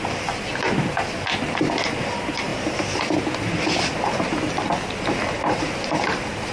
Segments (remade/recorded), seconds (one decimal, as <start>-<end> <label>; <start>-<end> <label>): 0.0-6.5 recorded